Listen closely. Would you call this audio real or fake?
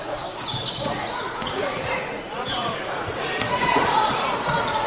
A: fake